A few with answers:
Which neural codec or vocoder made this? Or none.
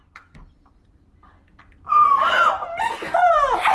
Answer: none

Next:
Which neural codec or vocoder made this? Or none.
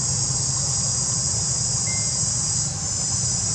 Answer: none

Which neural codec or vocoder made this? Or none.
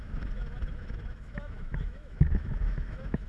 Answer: autoencoder, DAC-VAE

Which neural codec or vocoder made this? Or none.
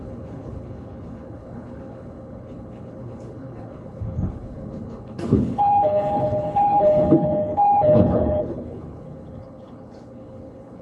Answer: codec, HILCodec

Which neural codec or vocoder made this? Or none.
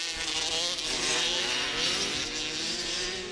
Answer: none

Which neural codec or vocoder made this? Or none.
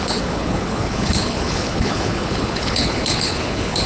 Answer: codec, HILCodec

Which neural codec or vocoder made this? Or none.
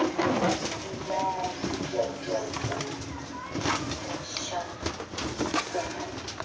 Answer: none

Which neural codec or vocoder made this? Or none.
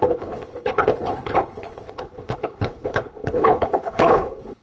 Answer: codec, HILCodec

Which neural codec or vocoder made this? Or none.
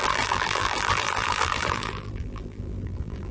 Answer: vocoder, BigVGAN v2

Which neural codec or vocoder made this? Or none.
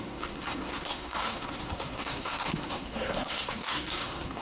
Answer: codec, SNAC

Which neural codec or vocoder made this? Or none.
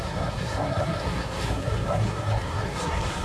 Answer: codec, SNAC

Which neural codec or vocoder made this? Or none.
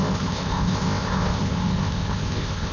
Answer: codec, ZipCodec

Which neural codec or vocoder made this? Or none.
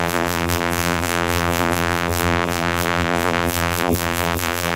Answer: vocoder, BigVGAN v2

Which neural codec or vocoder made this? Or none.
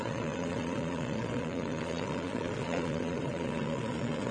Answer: vocoder, Vocos